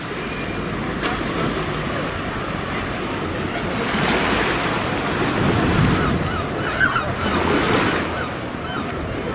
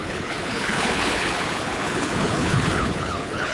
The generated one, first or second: second